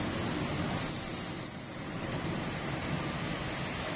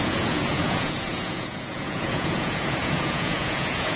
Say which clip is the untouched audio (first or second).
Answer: first